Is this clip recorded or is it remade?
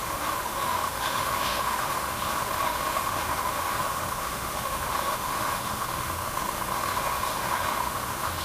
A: remade